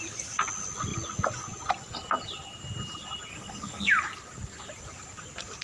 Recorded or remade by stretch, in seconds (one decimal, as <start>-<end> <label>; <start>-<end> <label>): 0.0-3.3 recorded; 3.3-3.9 remade; 3.9-5.6 recorded